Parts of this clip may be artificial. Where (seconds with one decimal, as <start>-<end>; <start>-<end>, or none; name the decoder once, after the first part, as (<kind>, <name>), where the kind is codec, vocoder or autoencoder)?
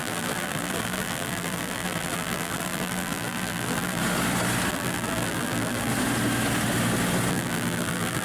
0.0-4.0 (vocoder, BigVGAN v2); 4.7-5.9; 7.3-8.2